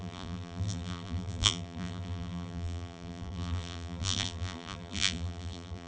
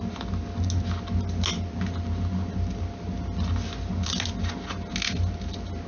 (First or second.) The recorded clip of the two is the second